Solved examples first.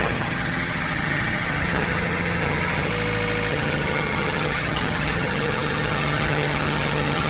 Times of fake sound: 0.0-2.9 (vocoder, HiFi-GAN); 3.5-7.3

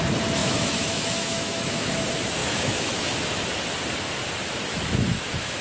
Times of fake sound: 0.4-1.9 (autoencoder, DAC-VAE); 2.4-3.2; 4.7-5.6

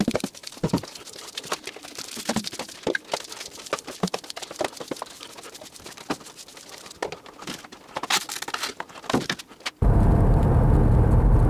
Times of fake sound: none

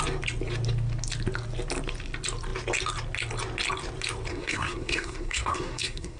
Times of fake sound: 4.3-6.2 (codec, SNAC)